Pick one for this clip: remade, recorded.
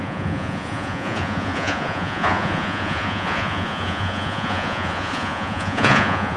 remade